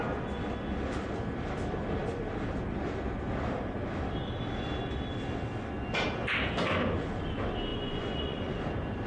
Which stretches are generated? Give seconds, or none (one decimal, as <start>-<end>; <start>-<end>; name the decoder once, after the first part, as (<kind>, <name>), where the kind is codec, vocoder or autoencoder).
7.7-8.6 (vocoder, Vocos)